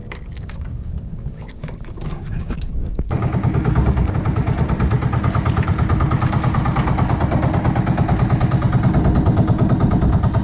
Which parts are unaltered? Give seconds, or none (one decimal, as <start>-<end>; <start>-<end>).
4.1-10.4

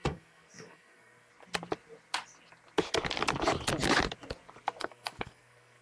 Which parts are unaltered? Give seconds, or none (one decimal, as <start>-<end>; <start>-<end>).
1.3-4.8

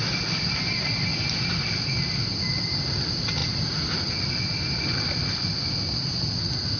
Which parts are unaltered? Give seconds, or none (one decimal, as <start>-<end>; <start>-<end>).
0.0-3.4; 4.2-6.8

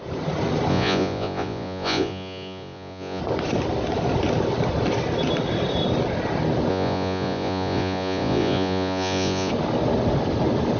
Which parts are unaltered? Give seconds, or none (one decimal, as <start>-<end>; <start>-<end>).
0.0-0.7; 3.2-6.7; 9.5-10.8

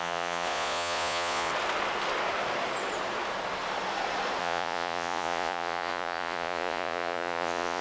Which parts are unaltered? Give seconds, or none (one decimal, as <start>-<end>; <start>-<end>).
1.5-4.4